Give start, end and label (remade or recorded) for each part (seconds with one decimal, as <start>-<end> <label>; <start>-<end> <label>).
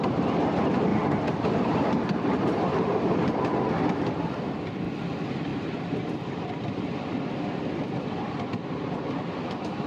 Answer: 0.0-0.9 recorded; 0.9-3.5 remade; 3.5-9.9 recorded